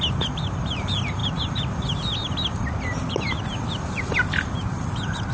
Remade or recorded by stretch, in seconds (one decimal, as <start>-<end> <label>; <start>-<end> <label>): 0.0-5.3 recorded